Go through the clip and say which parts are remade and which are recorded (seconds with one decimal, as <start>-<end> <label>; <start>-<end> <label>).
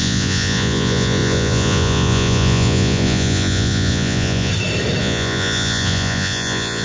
0.0-4.5 remade; 4.5-5.0 recorded; 5.0-6.8 remade